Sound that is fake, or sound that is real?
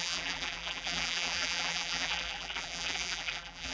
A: fake